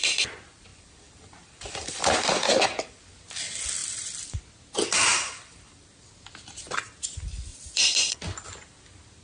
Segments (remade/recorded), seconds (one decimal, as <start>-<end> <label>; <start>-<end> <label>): 0.0-0.7 recorded; 0.7-3.2 remade; 3.2-3.8 recorded; 3.8-4.4 remade; 4.4-5.1 recorded; 5.1-6.1 remade; 6.1-7.5 recorded; 7.5-8.2 remade; 8.2-9.2 recorded